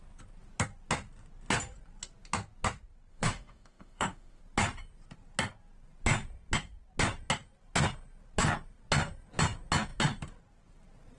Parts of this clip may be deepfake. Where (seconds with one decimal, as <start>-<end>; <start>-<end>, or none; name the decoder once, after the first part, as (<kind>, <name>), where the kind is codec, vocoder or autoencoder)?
3.1-4.4 (autoencoder, DAC-VAE)